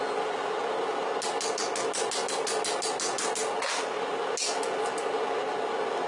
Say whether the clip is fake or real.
real